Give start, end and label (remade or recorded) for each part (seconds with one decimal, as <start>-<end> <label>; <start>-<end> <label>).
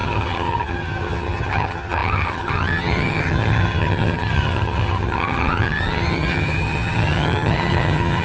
0.0-8.2 remade